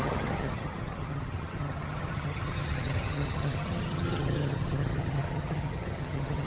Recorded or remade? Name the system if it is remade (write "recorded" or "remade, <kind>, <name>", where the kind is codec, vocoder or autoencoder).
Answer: remade, vocoder, HiFi-GAN